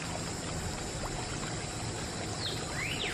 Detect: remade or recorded recorded